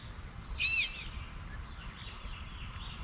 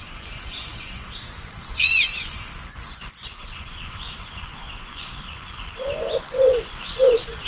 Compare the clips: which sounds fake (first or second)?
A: second